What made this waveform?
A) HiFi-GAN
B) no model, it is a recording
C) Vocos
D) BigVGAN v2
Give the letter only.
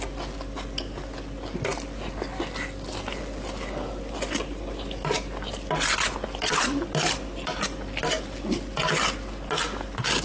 B